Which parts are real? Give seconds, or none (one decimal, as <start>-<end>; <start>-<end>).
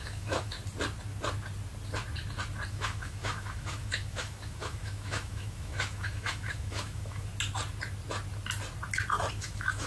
0.6-2.7; 7.3-9.3